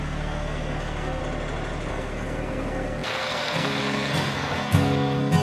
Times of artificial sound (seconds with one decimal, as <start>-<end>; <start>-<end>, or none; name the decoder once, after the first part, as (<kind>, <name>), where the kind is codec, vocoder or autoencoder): 0.0-1.2 (codec, SNAC); 1.9-5.4